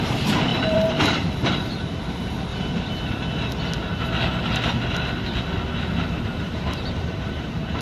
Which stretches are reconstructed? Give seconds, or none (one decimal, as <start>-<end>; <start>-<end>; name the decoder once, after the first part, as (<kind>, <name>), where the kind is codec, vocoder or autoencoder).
0.0-2.5 (vocoder, BigVGAN v2); 6.2-7.8